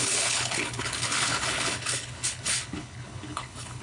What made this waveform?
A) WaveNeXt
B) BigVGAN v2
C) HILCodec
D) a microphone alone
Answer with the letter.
C